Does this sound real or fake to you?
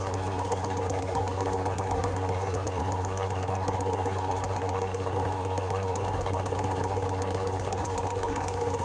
fake